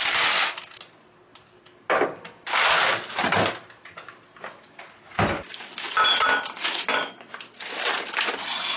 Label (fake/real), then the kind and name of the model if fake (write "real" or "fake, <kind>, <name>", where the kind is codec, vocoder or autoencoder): real